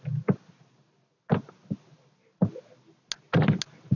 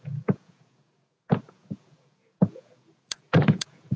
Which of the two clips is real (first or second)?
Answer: first